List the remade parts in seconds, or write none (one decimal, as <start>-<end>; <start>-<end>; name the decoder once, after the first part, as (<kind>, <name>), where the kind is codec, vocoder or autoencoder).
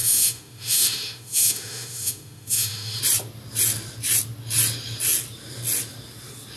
0.0-3.0 (autoencoder, DAC-VAE)